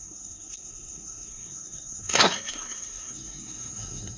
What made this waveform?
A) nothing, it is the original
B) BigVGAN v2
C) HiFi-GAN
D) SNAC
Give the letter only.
D